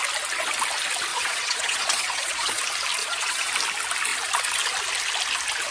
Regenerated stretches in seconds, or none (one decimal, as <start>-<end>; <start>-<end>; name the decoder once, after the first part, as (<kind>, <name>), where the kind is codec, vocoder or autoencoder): 1.1-2.6 (vocoder, Vocos); 3.0-3.5